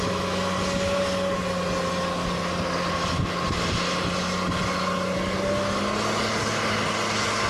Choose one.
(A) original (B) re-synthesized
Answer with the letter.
A